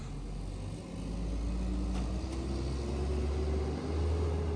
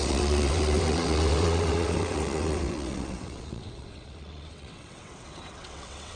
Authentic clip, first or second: first